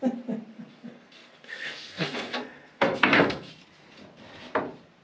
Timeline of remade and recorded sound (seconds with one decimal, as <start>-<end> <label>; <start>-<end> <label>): 0.0-0.5 recorded; 0.5-3.5 remade; 3.5-5.0 recorded